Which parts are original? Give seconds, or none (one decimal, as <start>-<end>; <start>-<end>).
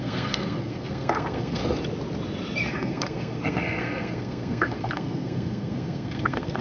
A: 1.6-2.7